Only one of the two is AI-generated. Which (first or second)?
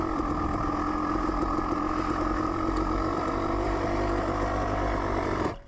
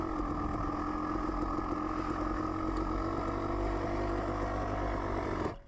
first